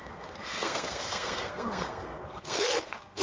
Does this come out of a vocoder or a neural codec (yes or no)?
yes